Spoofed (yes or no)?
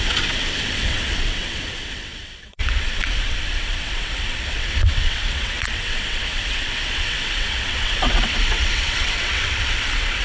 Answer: yes